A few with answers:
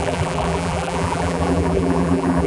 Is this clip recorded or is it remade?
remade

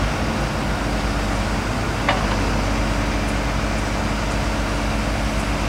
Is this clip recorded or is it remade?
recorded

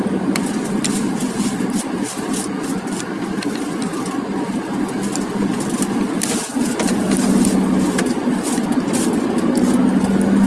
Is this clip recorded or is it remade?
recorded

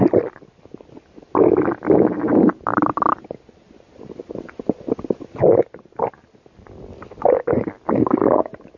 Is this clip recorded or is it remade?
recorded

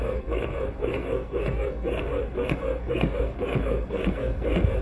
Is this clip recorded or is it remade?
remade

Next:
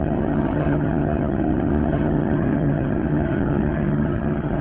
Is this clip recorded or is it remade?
remade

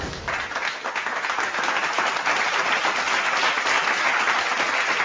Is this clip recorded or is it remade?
recorded